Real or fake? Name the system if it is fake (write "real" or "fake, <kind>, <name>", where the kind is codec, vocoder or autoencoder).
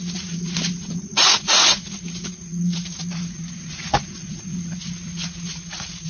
fake, vocoder, Vocos